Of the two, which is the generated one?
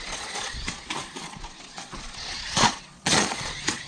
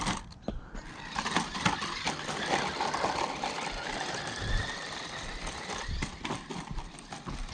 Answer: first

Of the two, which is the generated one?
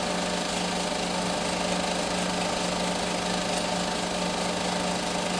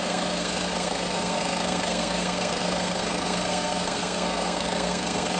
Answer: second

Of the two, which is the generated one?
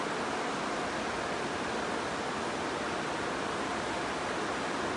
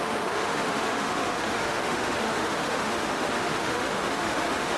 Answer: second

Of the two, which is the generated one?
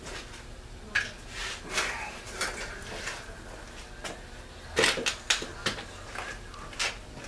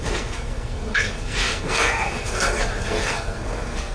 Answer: second